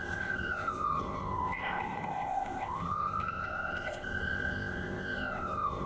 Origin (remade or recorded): remade